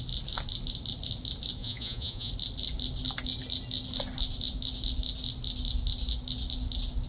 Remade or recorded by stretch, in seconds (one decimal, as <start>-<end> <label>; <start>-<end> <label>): 0.0-1.6 recorded; 1.6-2.3 remade; 2.3-7.1 recorded